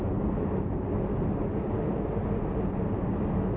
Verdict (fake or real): real